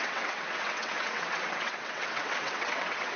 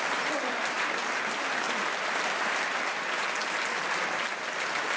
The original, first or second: second